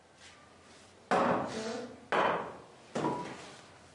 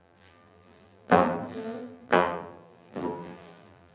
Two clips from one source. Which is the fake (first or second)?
second